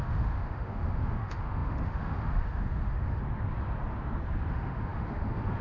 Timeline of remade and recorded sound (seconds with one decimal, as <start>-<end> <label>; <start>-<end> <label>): 0.0-3.2 remade; 3.2-4.5 recorded; 4.5-5.6 remade